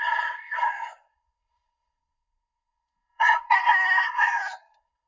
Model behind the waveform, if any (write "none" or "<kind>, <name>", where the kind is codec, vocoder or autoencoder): codec, SNAC